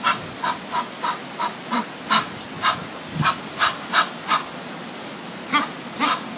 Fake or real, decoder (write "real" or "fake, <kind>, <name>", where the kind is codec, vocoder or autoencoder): real